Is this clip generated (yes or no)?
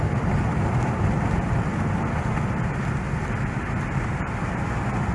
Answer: no